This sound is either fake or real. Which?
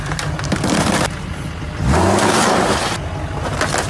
real